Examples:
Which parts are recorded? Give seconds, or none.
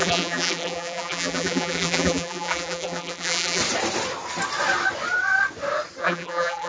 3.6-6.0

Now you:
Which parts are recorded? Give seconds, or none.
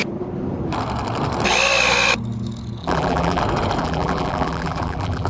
0.0-2.8; 3.4-3.8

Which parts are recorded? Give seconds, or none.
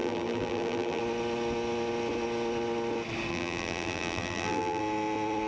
1.0-3.3; 4.8-5.5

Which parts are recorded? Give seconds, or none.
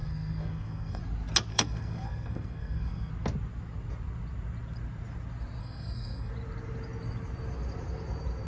1.0-1.5; 3.1-5.6; 6.3-8.5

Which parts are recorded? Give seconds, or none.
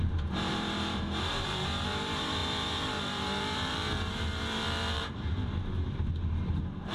none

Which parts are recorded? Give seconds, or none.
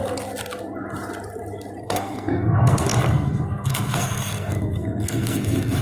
0.0-1.8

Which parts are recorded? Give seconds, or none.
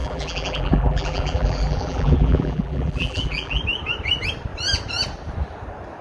3.6-6.0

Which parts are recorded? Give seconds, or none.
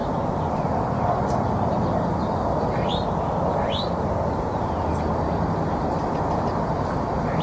0.0-7.4